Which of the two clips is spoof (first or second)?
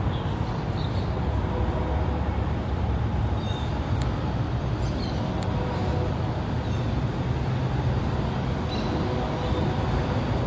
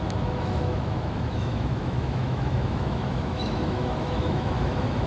second